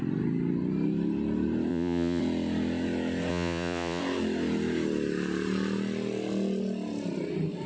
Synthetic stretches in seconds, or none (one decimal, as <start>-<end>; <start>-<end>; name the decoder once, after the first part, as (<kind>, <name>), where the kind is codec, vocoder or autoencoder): 1.7-2.2 (vocoder, Vocos); 3.3-4.0